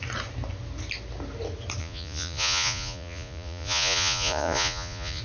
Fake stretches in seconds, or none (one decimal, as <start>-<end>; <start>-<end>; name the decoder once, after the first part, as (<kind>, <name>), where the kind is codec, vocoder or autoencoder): 1.8-5.2 (vocoder, Vocos)